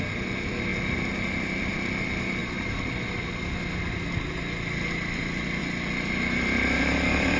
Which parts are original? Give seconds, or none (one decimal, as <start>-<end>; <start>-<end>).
0.0-7.4